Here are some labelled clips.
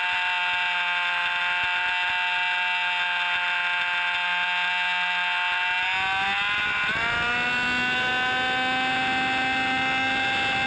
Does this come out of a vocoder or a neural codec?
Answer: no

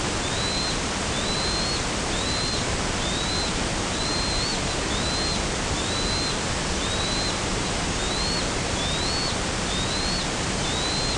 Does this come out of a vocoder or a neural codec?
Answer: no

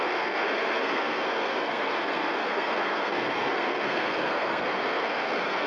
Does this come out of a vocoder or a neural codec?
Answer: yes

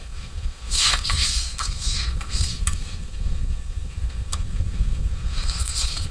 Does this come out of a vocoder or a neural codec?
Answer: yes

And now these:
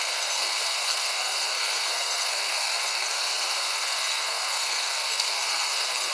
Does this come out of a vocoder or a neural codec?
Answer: yes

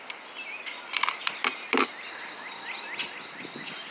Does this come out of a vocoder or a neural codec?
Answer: no